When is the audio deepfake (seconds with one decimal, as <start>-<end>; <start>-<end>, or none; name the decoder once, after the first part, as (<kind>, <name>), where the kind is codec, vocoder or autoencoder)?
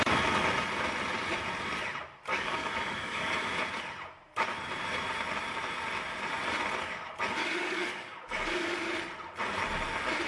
2.3-3.6 (codec, DAC); 7.4-8.7